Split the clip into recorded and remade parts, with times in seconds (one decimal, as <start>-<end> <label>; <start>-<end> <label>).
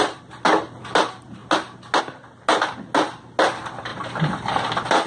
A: 0.0-5.1 recorded